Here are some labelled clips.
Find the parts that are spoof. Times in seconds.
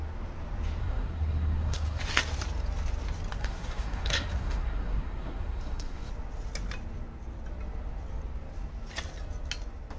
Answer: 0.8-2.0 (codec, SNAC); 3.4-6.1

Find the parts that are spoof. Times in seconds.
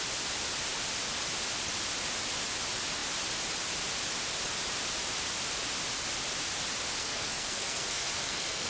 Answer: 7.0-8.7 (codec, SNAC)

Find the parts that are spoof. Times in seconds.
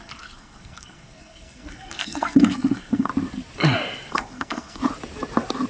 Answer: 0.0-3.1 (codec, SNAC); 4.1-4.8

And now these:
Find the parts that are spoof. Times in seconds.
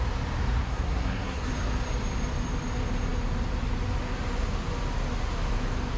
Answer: 0.6-1.5 (codec, SNAC)